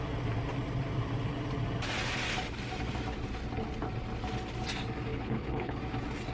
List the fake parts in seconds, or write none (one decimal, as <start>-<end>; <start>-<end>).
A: 5.1-5.8